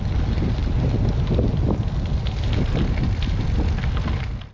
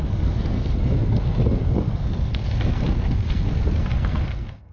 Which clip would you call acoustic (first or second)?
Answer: first